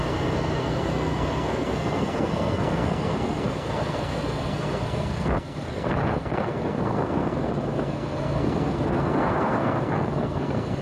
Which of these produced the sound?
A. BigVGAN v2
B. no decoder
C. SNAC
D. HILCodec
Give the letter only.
C